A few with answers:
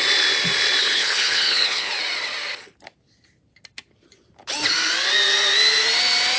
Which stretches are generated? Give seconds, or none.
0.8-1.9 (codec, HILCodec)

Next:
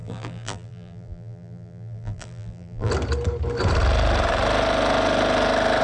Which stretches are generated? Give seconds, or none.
0.0-2.9 (vocoder, BigVGAN v2)

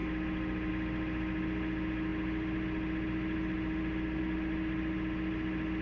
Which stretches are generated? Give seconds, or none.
none

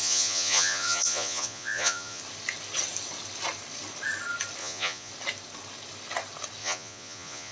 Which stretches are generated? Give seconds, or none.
0.0-2.2 (vocoder, Vocos); 4.6-5.1; 6.6-7.5

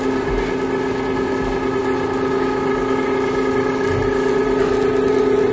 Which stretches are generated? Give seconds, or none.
none

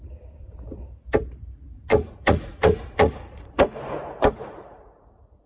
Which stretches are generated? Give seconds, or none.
1.9-5.5 (vocoder, Vocos)

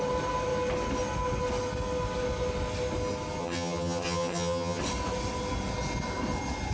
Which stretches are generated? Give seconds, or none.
3.4-4.8 (vocoder, HiFi-GAN)

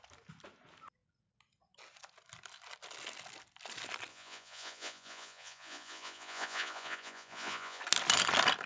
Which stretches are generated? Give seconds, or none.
4.1-7.8 (vocoder, Vocos)